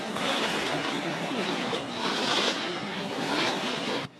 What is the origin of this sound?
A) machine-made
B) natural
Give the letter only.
A